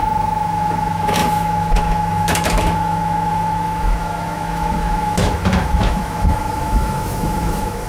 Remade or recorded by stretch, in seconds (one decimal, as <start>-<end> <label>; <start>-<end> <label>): 0.0-7.9 remade

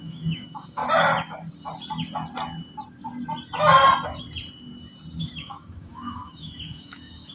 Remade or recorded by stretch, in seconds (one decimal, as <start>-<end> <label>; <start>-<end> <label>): 0.0-0.8 remade; 0.8-5.2 recorded; 5.2-7.3 remade